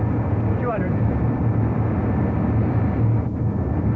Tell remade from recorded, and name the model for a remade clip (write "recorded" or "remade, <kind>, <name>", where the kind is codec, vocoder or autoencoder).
recorded